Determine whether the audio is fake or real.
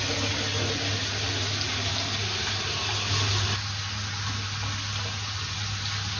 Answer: real